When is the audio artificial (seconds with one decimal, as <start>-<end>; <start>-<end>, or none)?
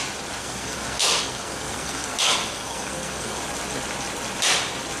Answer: 0.4-3.4